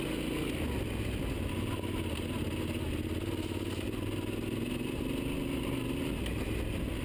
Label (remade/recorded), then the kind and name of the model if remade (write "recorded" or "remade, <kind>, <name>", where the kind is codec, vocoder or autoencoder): recorded